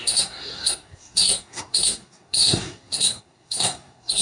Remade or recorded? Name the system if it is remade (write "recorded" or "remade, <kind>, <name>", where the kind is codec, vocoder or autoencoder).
remade, codec, SNAC